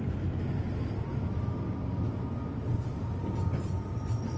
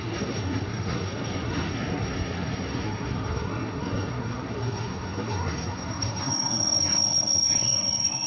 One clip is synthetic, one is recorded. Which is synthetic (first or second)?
second